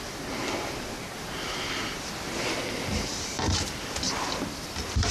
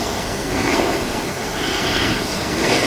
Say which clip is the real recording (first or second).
first